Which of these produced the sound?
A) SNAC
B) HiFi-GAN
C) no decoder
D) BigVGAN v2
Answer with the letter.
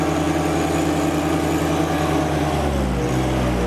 C